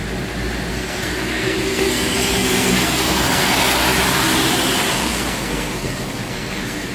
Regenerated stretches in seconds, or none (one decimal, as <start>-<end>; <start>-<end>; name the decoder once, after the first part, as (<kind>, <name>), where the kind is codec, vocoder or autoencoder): 0.7-3.8 (codec, SNAC); 4.9-6.9